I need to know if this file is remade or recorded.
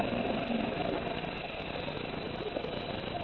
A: recorded